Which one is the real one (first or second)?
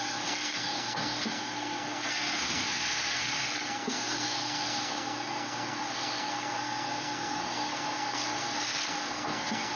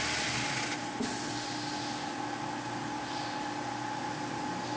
second